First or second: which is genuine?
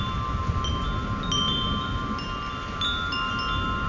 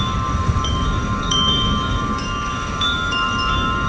first